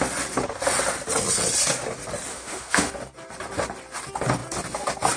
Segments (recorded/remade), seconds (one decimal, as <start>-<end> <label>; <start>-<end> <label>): 0.0-2.3 recorded; 2.3-2.9 remade; 2.9-5.2 recorded